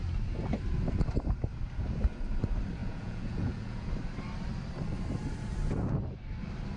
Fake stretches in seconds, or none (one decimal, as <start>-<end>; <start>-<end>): 2.8-3.9